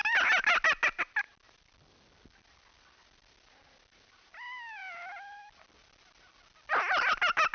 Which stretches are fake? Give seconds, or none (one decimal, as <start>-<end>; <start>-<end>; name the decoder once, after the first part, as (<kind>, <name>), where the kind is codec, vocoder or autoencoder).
4.8-7.1 (vocoder, BigVGAN v2)